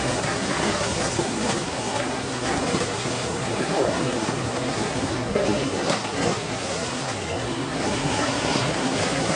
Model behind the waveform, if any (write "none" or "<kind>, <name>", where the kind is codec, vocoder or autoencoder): codec, SNAC